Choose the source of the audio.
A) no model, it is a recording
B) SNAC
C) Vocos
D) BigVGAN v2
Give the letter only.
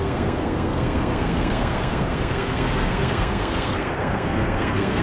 B